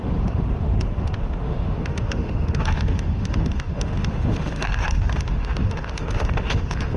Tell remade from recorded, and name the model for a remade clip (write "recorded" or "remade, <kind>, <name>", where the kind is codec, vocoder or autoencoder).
remade, autoencoder, DAC-VAE